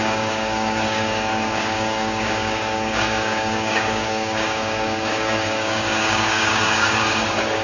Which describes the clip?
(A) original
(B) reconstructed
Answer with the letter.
B